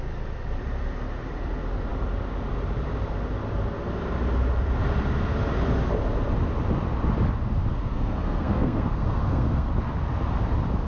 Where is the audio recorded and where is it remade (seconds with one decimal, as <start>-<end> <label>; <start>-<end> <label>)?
0.0-7.7 recorded; 7.7-9.7 remade; 9.7-10.9 recorded